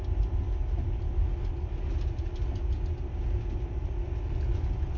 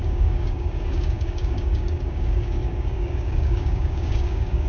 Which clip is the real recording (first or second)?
first